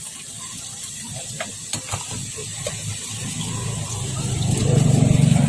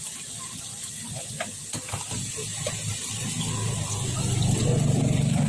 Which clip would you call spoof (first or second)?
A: first